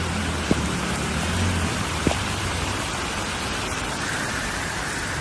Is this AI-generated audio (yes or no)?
no